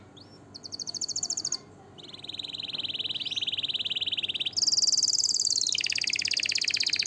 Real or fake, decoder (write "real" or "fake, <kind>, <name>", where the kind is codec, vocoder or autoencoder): real